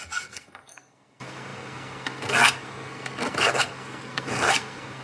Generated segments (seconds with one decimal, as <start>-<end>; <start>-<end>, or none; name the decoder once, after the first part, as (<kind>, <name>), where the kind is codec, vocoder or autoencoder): 0.0-5.0 (codec, SNAC)